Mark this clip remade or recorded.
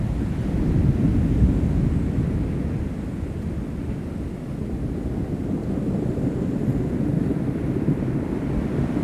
recorded